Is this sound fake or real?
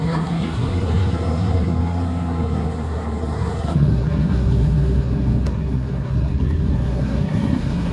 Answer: fake